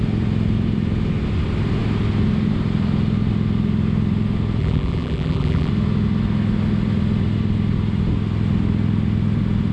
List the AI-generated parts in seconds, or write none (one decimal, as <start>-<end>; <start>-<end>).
4.6-5.7